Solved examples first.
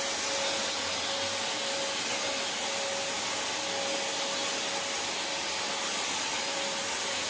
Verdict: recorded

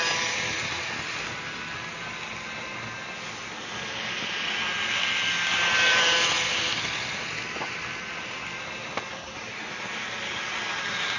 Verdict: recorded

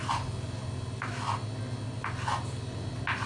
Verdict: recorded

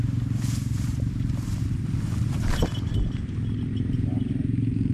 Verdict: remade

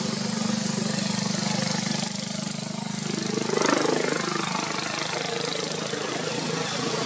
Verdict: recorded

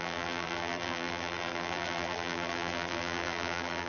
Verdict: remade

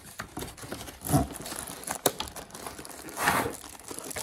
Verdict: recorded